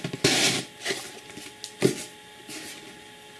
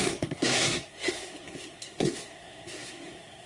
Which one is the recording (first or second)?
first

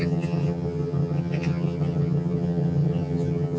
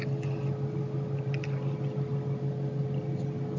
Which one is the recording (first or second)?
second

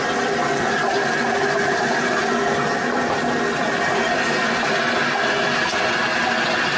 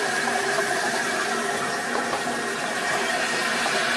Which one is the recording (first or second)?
first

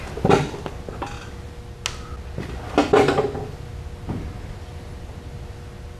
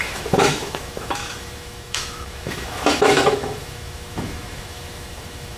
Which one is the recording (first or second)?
first